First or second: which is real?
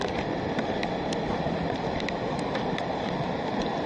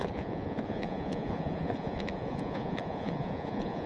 first